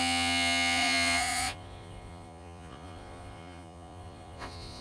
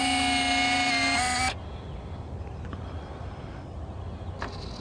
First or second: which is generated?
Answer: first